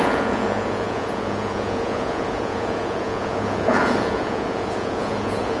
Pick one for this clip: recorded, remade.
remade